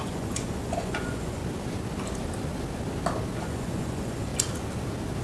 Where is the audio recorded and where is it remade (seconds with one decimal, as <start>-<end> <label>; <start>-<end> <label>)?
0.0-1.4 remade; 1.4-3.4 recorded; 3.4-4.3 remade; 4.3-5.2 recorded